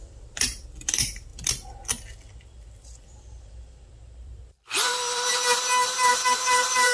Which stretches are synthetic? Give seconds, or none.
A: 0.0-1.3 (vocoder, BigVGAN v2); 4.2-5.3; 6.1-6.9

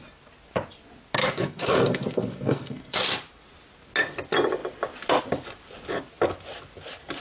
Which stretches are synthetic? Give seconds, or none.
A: 1.2-3.0 (codec, SNAC)

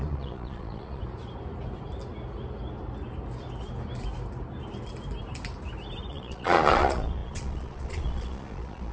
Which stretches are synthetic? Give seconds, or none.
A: 0.0-1.0 (vocoder, Vocos); 6.1-8.9